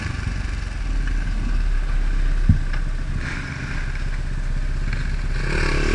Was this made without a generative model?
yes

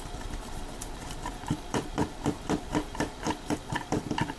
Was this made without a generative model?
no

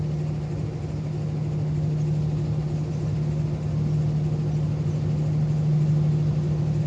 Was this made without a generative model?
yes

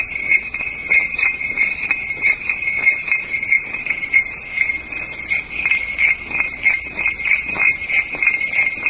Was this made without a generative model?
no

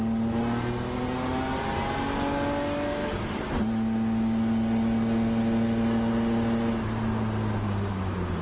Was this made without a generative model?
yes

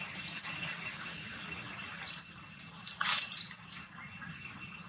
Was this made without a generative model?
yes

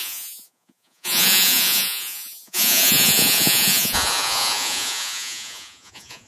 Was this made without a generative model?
no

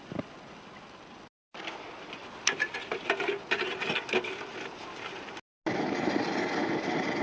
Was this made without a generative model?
yes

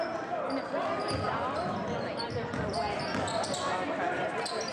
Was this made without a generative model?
yes